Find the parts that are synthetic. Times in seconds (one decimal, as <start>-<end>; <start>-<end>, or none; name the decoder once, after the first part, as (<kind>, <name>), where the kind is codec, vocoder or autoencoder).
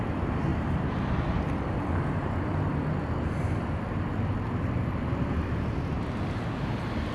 0.5-1.0 (vocoder, BigVGAN v2)